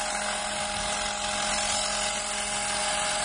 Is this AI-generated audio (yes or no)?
no